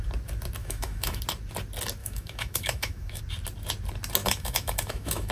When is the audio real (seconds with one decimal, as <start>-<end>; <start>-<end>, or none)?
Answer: 0.0-0.6; 1.2-2.0; 3.2-4.2